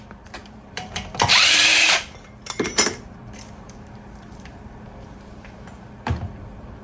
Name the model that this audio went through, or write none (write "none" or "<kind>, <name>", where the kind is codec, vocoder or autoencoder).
vocoder, BigVGAN v2